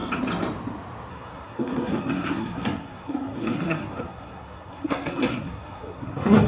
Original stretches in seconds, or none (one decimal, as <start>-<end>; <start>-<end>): 0.0-1.1